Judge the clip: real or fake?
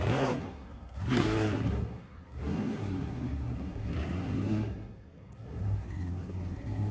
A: fake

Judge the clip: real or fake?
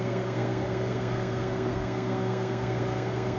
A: fake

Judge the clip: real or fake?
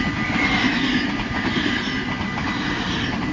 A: real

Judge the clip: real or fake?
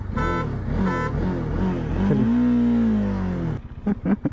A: real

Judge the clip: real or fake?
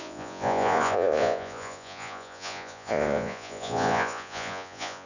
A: fake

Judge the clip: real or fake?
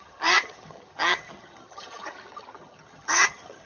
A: fake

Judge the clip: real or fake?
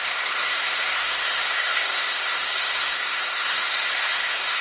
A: fake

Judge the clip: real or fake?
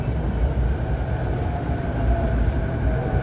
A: real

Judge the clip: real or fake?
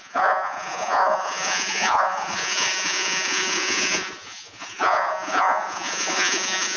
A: fake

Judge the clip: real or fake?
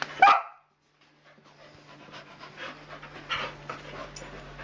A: real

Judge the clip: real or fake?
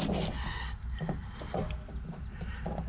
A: real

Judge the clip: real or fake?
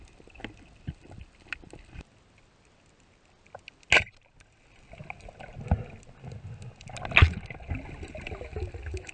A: real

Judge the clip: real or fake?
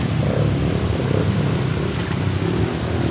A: real